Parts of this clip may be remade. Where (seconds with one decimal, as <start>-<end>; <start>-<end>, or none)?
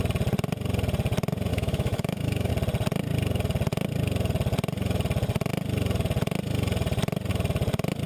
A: 1.5-2.5